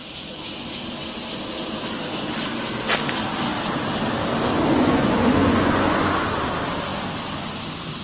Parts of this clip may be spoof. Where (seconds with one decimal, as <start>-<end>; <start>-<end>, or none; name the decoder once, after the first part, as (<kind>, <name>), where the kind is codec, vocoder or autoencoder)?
0.0-0.7 (vocoder, Vocos); 4.7-6.3